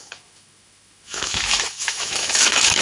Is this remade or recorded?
remade